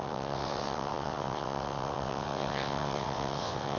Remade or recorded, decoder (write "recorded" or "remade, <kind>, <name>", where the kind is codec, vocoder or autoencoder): remade, vocoder, WaveNeXt